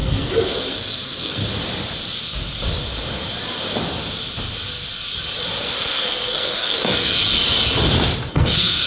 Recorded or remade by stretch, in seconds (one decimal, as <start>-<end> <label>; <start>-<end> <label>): 0.0-1.4 remade; 1.4-5.6 recorded; 5.6-7.2 remade; 7.2-8.3 recorded; 8.3-8.9 remade